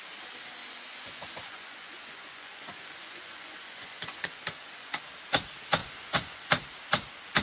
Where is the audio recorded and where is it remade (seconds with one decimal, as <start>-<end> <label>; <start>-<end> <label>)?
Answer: 0.0-0.6 recorded; 0.6-5.0 remade; 5.0-5.8 recorded; 5.8-6.4 remade; 6.4-7.4 recorded